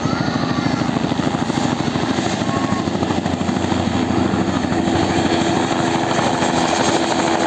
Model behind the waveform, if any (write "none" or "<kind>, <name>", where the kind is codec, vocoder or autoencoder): none